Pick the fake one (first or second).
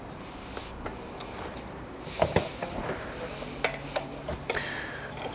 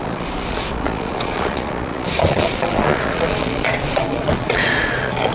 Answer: second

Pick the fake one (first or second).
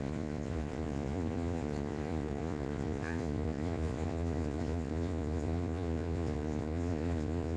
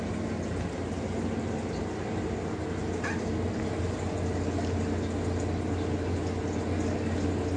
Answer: first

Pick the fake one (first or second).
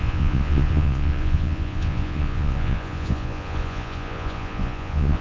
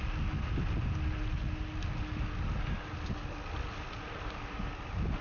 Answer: first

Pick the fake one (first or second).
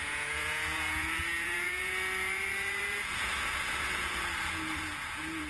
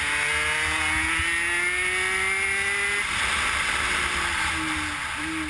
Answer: first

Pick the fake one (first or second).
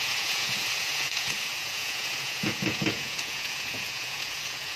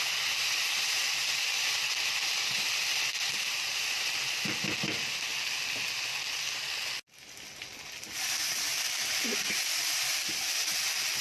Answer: first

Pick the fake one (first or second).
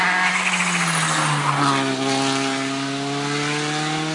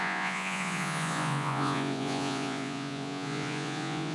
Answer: second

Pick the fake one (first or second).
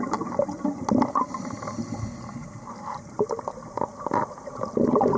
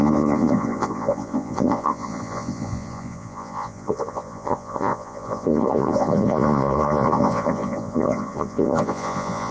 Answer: second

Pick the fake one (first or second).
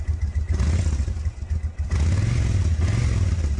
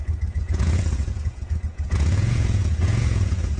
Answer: second